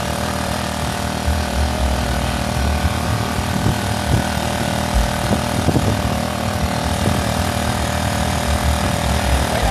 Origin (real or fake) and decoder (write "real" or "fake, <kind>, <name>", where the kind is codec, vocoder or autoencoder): real